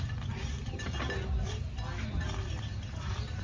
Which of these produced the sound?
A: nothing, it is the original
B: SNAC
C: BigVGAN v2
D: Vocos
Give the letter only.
A